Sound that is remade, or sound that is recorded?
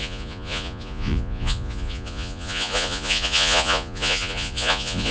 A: remade